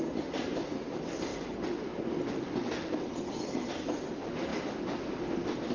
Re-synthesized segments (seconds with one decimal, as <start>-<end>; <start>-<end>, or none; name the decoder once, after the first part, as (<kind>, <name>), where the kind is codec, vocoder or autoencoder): none